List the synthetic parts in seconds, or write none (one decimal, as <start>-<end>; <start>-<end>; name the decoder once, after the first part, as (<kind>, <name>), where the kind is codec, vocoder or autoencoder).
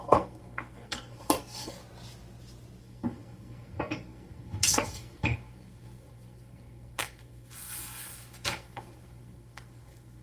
0.0-1.8 (codec, SNAC); 2.8-10.2